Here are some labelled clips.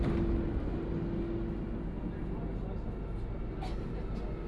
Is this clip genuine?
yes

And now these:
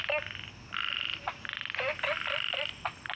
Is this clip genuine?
yes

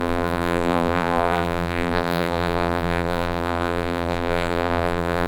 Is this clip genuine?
no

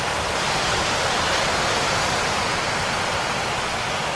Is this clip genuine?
yes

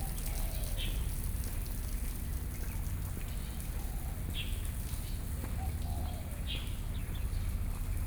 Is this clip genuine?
yes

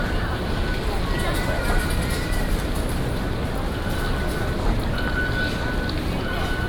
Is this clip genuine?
yes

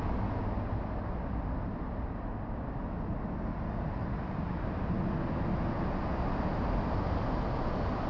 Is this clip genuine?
yes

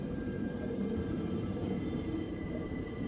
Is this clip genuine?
no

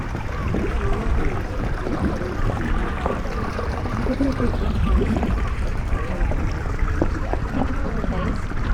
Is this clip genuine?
no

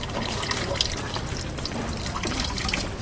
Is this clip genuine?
yes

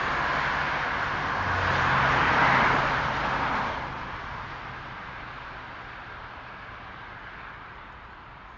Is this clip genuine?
yes